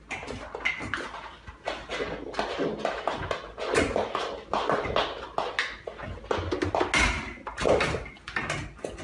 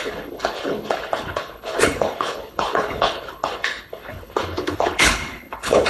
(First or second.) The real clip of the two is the first